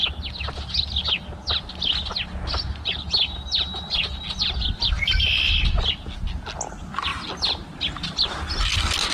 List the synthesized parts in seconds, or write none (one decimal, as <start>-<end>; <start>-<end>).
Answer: none